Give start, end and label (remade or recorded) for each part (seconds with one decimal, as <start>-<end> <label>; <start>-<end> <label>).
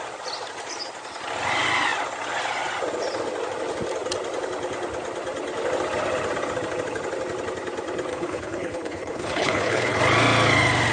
0.0-8.1 recorded; 8.1-10.0 remade; 10.0-10.9 recorded